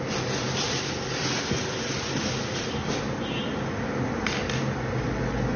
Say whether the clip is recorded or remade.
recorded